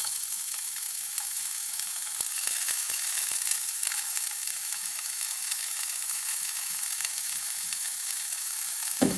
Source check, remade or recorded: remade